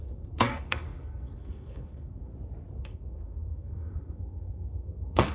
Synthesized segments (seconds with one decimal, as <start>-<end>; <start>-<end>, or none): 0.0-2.3; 2.8-5.3